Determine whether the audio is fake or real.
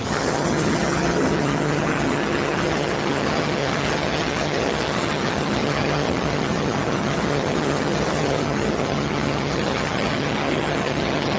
fake